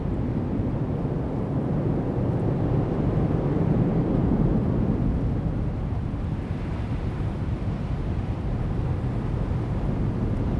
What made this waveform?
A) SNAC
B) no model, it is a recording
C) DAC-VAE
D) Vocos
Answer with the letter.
B